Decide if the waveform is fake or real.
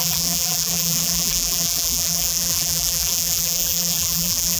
fake